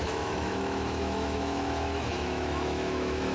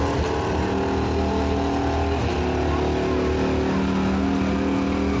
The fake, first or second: first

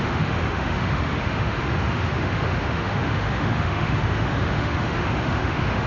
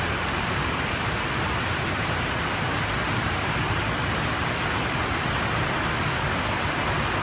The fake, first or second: first